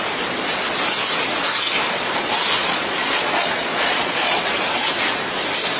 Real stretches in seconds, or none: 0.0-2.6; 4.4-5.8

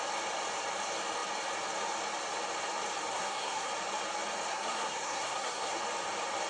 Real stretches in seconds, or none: 0.0-3.1; 3.7-4.5; 5.8-6.5

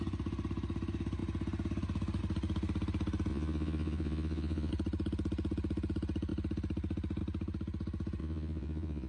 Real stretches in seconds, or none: 0.0-3.3; 4.7-8.2